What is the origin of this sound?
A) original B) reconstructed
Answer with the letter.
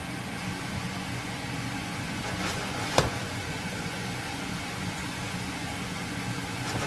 B